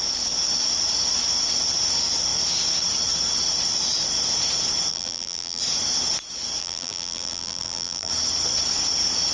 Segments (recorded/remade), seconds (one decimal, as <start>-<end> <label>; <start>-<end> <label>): 0.0-4.9 recorded; 4.9-5.6 remade; 5.6-6.6 recorded; 6.6-8.1 remade; 8.1-9.3 recorded